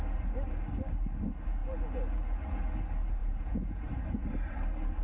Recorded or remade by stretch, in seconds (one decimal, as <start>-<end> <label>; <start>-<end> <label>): 0.0-3.2 recorded; 3.2-3.8 remade; 3.8-5.0 recorded